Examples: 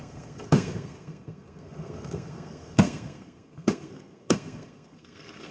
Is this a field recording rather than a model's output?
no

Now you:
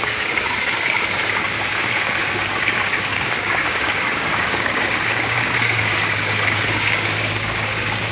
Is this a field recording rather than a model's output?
no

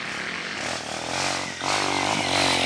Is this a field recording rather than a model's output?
yes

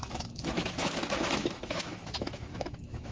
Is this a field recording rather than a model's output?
no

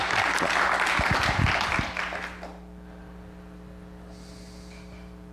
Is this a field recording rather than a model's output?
yes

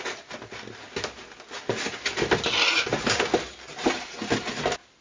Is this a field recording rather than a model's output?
yes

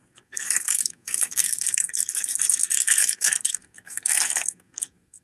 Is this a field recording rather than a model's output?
no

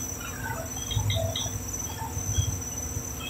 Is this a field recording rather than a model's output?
yes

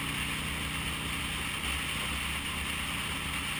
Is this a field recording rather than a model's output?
yes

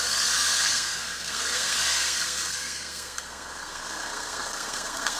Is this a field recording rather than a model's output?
no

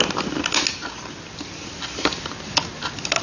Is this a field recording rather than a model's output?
yes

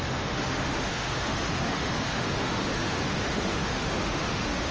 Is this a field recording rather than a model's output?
no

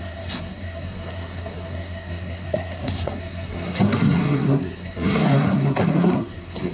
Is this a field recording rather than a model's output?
no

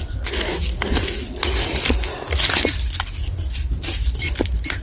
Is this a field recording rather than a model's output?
yes